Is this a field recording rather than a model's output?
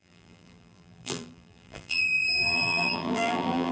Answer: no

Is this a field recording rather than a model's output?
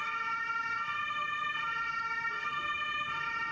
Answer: yes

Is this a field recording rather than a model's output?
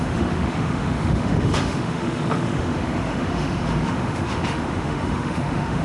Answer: no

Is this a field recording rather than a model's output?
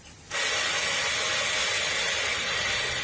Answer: no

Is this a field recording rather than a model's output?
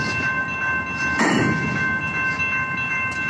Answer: yes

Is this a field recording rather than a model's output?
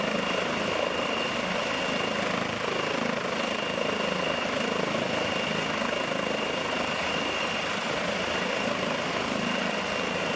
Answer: yes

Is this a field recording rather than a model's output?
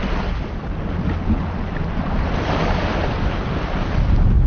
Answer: yes